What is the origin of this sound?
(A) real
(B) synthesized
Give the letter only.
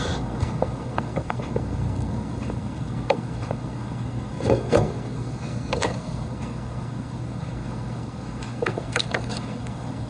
B